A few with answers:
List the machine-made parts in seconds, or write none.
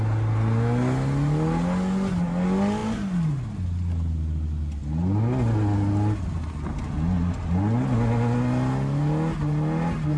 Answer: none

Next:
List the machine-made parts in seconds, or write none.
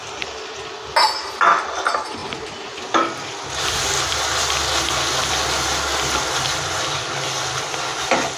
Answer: none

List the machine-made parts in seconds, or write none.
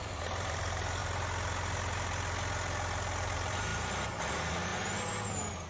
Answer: 0.0-1.0 (vocoder, BigVGAN v2); 3.2-3.7; 4.3-4.7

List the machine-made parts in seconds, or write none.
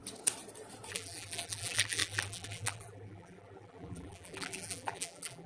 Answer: 0.9-5.5 (vocoder, BigVGAN v2)